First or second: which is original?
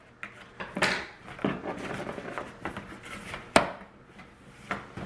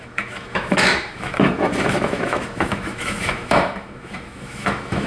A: first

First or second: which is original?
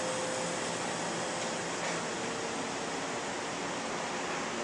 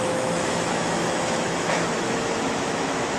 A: first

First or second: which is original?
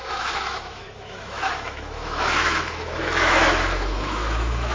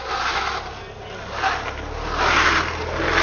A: second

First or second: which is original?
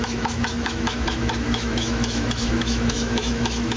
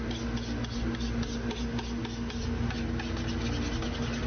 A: second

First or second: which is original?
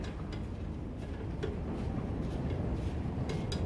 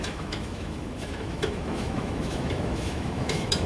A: first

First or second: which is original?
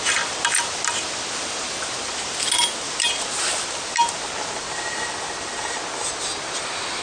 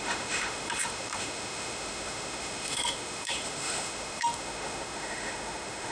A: first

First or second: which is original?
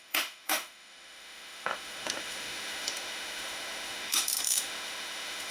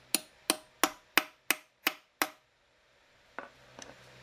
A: second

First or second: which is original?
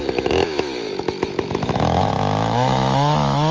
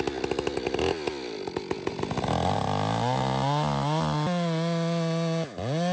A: second